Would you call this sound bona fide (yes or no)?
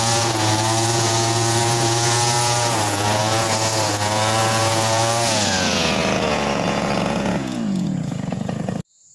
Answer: no